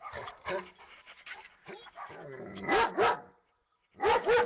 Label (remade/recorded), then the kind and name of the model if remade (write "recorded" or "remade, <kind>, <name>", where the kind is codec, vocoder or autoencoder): recorded